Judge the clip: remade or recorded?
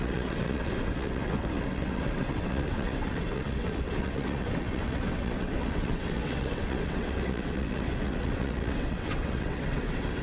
remade